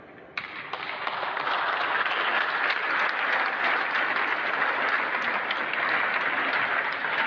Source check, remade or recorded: recorded